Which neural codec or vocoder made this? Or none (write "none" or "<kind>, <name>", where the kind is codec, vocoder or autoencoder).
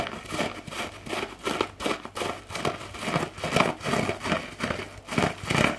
none